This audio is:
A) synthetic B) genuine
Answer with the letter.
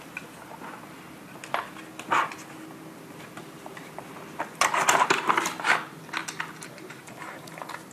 B